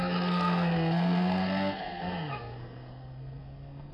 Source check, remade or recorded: remade